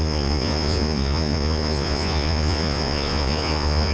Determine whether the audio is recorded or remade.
remade